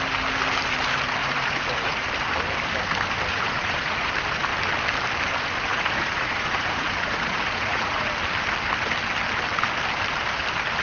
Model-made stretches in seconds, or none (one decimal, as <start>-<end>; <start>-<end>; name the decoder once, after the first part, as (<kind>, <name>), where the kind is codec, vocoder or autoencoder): 1.2-2.0 (vocoder, Vocos); 3.3-4.1; 5.7-8.1